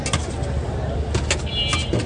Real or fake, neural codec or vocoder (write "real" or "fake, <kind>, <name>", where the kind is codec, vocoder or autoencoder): real